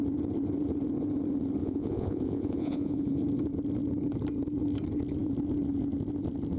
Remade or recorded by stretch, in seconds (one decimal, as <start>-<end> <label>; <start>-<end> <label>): 0.0-1.6 recorded; 1.6-3.2 remade; 3.2-6.6 recorded